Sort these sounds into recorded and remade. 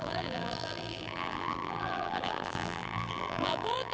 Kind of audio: remade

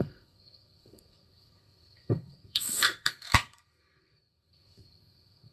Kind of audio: remade